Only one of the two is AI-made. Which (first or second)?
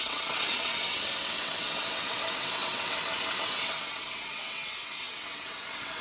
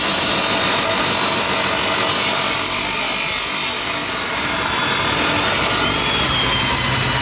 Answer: first